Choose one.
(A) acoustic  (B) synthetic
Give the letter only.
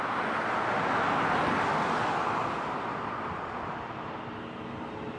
A